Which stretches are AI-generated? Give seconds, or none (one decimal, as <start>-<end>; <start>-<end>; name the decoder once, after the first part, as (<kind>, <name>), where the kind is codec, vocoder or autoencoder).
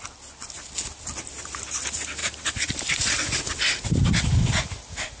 none